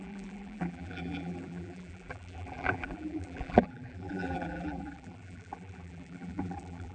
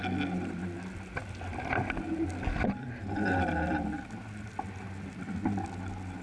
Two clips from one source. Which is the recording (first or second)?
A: second